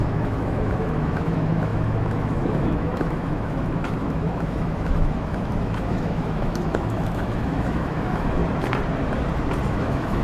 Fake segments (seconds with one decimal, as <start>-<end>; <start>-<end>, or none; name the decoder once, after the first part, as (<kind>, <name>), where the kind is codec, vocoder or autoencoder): 0.0-8.4 (autoencoder, DAC-VAE); 9.7-10.2